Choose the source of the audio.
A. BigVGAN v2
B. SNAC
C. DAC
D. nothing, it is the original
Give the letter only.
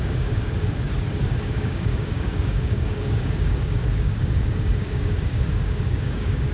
C